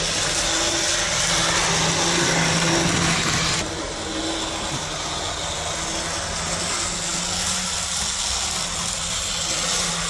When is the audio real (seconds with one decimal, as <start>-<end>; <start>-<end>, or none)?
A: 0.0-10.1